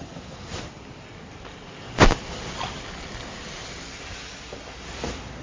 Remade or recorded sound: recorded